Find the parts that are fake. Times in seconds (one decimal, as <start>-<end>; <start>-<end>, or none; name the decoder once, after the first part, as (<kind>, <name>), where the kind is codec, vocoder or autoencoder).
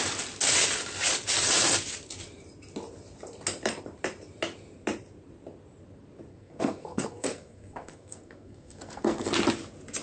6.3-9.3 (codec, SNAC)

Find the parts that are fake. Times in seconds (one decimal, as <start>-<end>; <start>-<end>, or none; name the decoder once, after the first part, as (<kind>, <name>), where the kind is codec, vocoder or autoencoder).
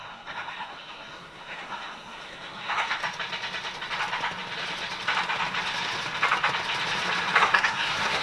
0.0-3.0 (codec, SNAC); 7.4-8.2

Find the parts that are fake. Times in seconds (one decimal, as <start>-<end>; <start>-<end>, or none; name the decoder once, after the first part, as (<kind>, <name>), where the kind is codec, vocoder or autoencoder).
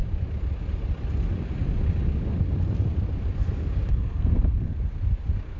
3.9-4.7 (codec, SNAC)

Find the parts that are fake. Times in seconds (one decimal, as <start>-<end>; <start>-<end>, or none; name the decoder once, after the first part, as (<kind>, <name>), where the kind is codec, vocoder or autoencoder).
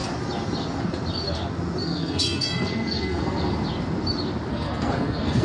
1.8-3.5 (codec, SNAC); 4.5-5.4